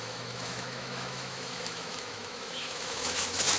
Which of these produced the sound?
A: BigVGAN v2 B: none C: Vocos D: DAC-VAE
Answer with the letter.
D